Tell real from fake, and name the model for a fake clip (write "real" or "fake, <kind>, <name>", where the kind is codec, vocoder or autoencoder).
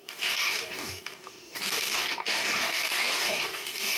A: fake, codec, DAC